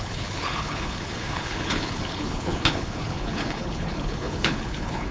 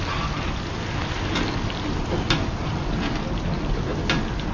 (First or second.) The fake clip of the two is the first